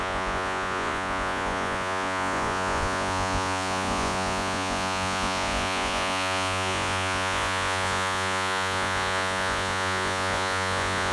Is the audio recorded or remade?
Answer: remade